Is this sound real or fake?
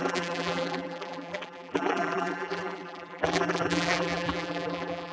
fake